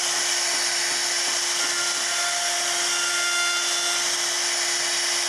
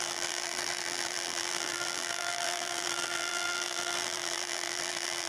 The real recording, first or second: first